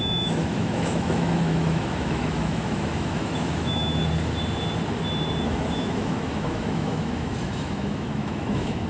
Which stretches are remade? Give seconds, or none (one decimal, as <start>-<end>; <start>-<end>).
0.0-4.0; 5.4-8.9